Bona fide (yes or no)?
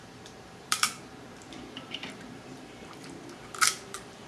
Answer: no